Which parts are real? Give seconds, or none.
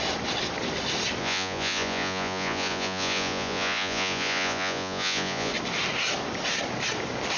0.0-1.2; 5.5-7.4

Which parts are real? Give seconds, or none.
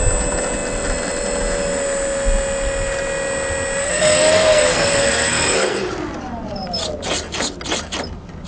0.0-3.8; 5.9-8.5